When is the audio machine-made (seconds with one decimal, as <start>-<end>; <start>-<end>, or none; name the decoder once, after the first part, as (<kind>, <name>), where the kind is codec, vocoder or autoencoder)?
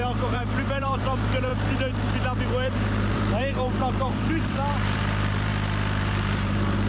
0.0-1.5 (vocoder, BigVGAN v2); 2.4-5.5; 6.0-6.9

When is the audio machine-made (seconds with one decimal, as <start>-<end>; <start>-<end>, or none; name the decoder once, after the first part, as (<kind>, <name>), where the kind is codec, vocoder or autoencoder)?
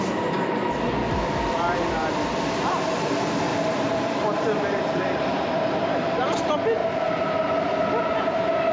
0.0-3.5 (vocoder, BigVGAN v2); 4.7-6.8; 8.2-8.7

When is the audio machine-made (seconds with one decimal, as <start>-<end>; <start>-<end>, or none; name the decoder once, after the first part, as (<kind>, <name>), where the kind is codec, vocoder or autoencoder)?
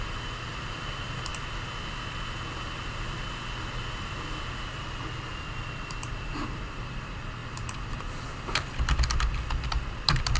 0.0-1.3 (vocoder, BigVGAN v2); 5.3-10.4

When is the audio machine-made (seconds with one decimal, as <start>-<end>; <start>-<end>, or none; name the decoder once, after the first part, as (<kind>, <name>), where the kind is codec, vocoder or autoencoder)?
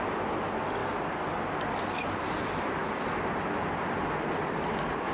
0.8-1.3 (vocoder, BigVGAN v2)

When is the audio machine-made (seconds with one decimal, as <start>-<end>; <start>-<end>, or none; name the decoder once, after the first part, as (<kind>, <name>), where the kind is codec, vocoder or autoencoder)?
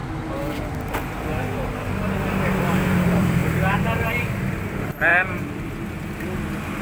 3.4-4.1 (vocoder, BigVGAN v2); 5.1-6.2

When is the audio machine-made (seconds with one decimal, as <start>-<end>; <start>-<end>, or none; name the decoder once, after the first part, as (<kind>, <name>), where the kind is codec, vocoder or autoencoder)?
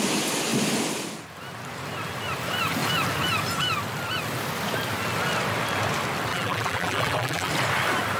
6.3-7.5 (vocoder, BigVGAN v2)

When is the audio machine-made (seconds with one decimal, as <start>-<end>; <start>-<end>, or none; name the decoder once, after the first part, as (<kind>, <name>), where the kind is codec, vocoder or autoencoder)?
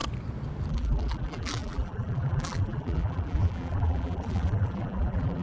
0.7-5.4 (vocoder, BigVGAN v2)